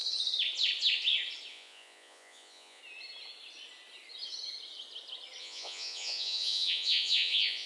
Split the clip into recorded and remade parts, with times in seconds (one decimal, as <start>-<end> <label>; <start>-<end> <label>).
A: 0.0-1.5 recorded; 1.5-2.8 remade; 2.8-5.4 recorded; 5.4-7.7 remade